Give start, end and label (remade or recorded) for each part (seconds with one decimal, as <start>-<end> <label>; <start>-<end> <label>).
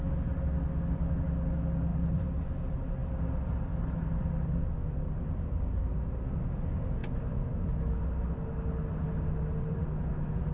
0.0-1.9 recorded; 1.9-2.4 remade; 2.4-10.5 recorded